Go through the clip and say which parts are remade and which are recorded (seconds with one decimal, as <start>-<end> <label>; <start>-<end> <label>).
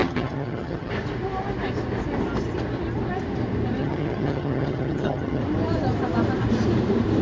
0.0-0.9 remade; 0.9-3.8 recorded; 3.8-5.4 remade; 5.4-7.2 recorded